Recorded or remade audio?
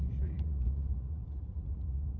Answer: remade